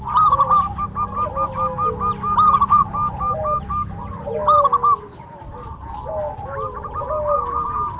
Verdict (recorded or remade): recorded